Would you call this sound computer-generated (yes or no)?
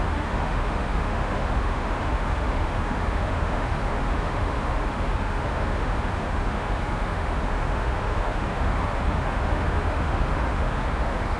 yes